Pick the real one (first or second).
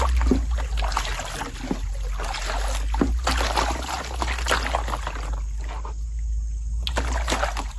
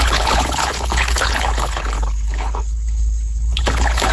first